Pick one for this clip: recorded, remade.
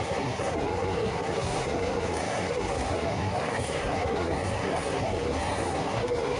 remade